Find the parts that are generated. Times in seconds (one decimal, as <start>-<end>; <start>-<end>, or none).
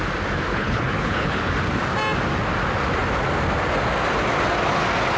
0.5-1.5